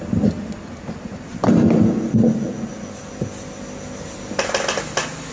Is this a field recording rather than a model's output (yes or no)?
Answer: yes